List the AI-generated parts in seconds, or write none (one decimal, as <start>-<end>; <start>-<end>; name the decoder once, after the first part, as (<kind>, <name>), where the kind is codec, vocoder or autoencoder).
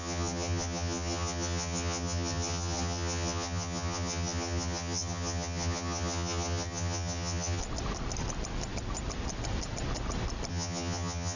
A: 0.0-7.6 (vocoder, HiFi-GAN); 10.5-11.4